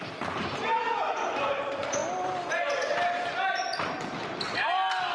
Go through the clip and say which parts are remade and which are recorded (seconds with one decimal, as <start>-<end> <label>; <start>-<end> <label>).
0.0-5.1 recorded